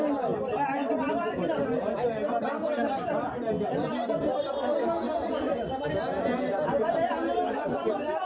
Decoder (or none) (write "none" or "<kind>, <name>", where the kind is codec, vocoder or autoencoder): none